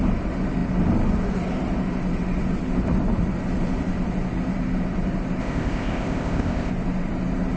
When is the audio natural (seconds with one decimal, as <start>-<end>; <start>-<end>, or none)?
0.0-5.4; 6.7-7.6